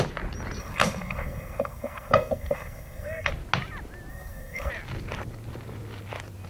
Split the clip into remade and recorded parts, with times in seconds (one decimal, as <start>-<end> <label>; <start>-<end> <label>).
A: 0.0-0.6 recorded; 0.6-3.3 remade; 3.3-4.1 recorded; 4.1-4.7 remade; 4.7-6.5 recorded